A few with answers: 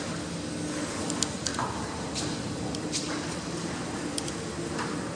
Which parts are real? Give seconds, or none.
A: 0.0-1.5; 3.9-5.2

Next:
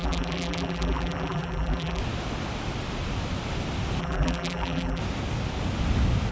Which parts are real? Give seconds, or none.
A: 2.0-4.0; 5.0-6.3

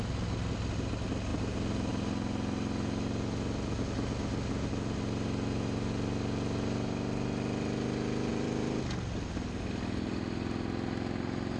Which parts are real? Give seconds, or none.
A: 0.0-8.3; 9.7-11.6